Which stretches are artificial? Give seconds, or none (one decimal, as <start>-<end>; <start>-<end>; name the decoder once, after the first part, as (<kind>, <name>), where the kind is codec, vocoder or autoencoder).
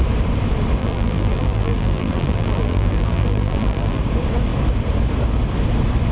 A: 0.8-4.0 (vocoder, BigVGAN v2)